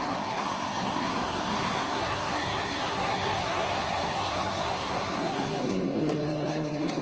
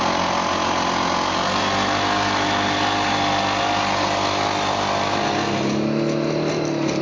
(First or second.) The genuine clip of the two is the second